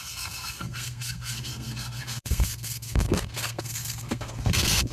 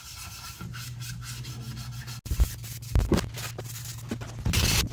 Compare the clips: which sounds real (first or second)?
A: second